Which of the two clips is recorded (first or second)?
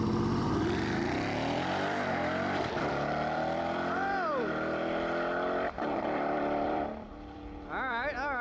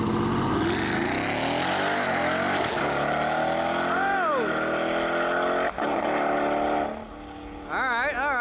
second